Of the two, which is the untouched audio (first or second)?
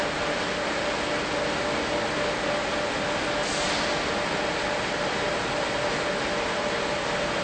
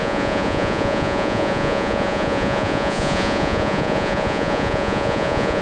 first